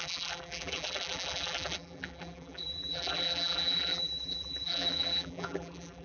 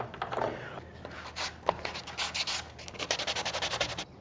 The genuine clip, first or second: second